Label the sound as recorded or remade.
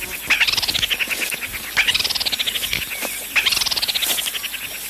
recorded